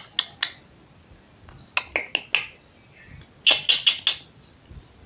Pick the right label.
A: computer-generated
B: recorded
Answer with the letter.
B